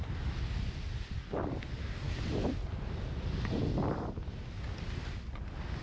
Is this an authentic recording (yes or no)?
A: yes